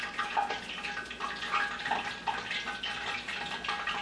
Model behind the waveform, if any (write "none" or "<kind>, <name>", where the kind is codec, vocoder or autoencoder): none